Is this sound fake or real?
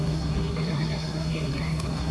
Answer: fake